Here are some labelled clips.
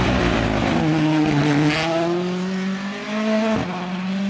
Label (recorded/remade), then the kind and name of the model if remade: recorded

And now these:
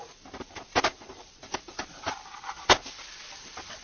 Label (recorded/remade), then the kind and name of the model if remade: recorded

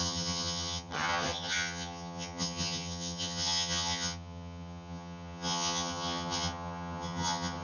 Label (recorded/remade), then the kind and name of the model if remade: remade, vocoder, HiFi-GAN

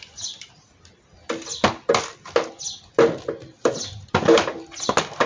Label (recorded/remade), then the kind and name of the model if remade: recorded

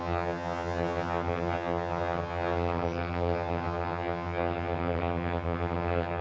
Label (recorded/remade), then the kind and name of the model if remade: remade, vocoder, HiFi-GAN